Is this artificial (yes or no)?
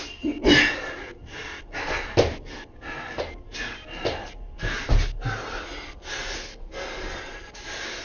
no